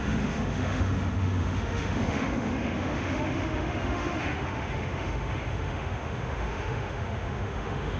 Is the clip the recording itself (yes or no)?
no